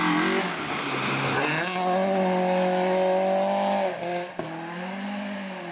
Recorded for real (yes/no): yes